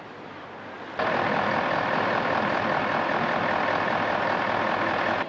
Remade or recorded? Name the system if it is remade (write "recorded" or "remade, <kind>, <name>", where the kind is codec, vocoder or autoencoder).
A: recorded